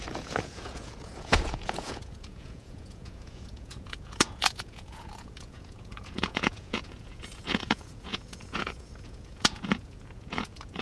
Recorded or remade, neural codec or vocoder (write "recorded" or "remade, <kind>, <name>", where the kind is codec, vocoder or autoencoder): remade, vocoder, Vocos